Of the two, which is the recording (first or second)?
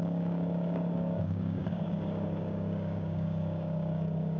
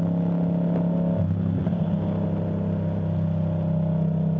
second